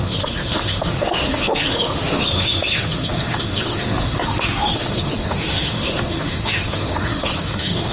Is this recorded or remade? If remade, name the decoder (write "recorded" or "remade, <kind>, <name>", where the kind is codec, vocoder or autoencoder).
remade, autoencoder, DAC-VAE